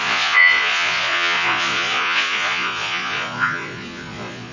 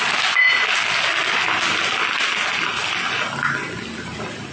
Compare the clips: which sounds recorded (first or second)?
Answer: second